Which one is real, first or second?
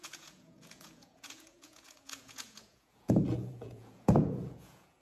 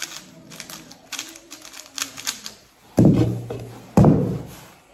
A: second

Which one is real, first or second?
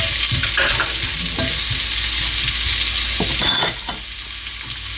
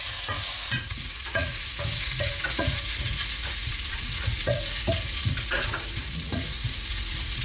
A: first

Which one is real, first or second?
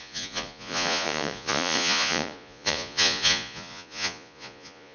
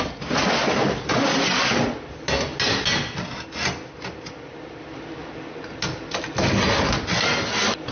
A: second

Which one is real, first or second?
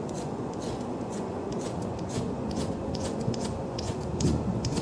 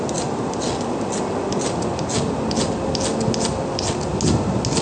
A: second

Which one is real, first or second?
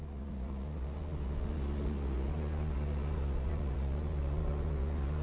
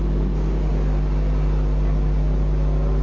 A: second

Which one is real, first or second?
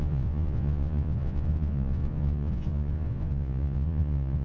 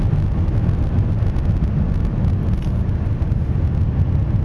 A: second